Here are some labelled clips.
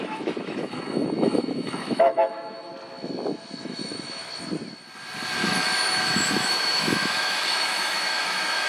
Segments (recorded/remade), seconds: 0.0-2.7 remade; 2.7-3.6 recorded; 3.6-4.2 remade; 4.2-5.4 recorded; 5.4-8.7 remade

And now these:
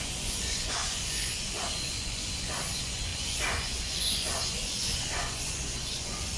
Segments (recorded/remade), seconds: 0.0-6.4 remade

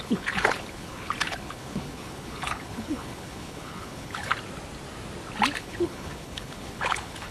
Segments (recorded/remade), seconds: 0.0-4.3 remade; 4.3-5.6 recorded; 5.6-7.3 remade

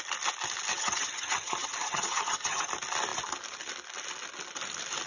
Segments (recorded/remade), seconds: 0.0-0.7 recorded; 0.7-2.7 remade; 2.7-5.1 recorded